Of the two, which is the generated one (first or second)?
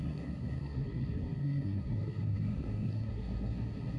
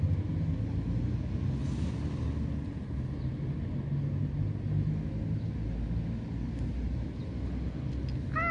first